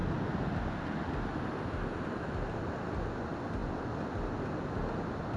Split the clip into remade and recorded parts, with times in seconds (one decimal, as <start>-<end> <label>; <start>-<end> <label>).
0.0-5.4 recorded